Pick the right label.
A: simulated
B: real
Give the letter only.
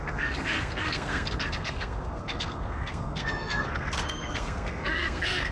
A